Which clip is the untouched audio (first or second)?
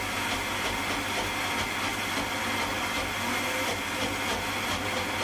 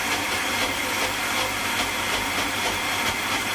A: first